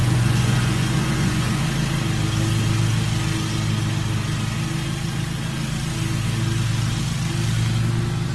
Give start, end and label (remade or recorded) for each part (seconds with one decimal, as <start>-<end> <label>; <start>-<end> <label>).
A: 0.0-1.6 remade; 1.6-8.3 recorded

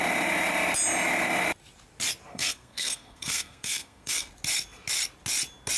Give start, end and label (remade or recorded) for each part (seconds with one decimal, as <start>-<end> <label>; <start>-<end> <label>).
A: 0.0-2.3 recorded; 2.3-4.3 remade; 4.3-5.8 recorded

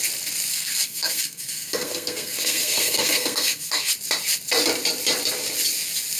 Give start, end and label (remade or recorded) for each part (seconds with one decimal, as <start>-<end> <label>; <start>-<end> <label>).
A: 0.0-0.5 recorded; 0.5-3.9 remade; 3.9-6.2 recorded

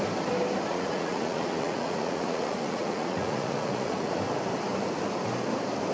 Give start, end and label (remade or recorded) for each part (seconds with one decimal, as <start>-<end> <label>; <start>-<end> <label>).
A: 0.0-0.7 recorded; 0.7-4.2 remade; 4.2-5.9 recorded